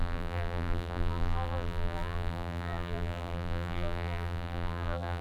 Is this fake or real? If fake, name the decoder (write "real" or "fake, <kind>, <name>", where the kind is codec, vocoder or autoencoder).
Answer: fake, vocoder, BigVGAN v2